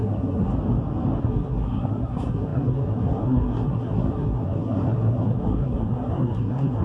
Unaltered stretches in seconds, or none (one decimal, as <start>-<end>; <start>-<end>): 0.5-1.2